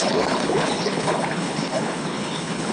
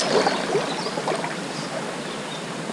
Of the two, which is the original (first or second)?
second